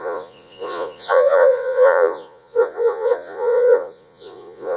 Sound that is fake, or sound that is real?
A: fake